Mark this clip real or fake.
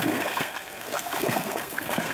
fake